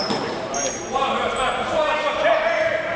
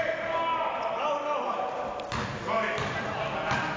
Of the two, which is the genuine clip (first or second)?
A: second